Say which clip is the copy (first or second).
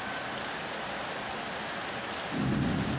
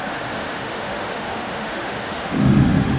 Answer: second